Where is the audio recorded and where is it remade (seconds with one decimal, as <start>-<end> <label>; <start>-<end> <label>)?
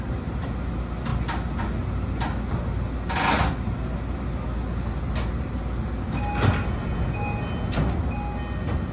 0.0-8.9 recorded